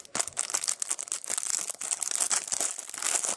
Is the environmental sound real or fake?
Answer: real